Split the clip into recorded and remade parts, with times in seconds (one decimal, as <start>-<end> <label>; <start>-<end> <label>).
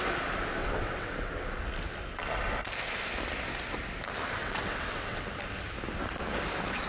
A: 0.0-0.6 recorded; 0.6-1.3 remade; 1.3-4.4 recorded; 4.4-5.2 remade; 5.2-6.9 recorded